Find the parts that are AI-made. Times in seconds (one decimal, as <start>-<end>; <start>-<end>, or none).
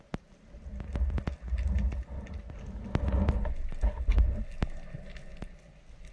none